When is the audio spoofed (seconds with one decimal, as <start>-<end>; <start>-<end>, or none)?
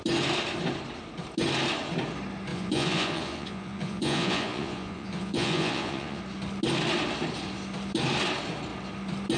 2.5-6.2